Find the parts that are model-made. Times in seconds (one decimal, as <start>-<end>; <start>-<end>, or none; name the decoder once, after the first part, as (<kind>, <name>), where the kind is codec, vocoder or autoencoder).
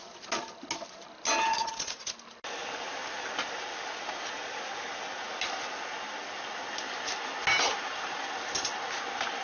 1.5-2.1 (vocoder, Vocos)